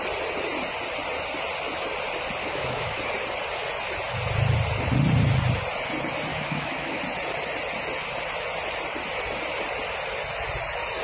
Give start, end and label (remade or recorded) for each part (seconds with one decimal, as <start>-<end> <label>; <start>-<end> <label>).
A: 0.0-2.4 recorded; 2.4-3.0 remade; 3.0-6.3 recorded; 6.3-7.0 remade; 7.0-11.0 recorded